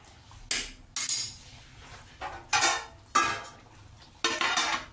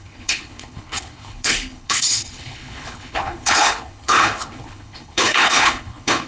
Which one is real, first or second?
first